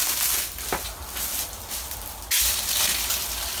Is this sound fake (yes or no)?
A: no